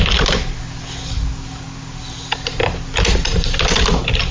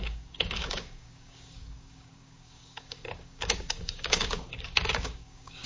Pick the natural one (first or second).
first